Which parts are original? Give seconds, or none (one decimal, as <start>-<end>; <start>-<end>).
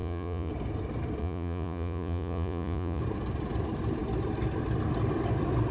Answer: 0.5-1.2; 3.0-5.7